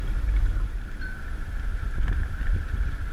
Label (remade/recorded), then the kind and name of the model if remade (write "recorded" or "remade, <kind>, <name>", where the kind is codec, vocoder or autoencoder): recorded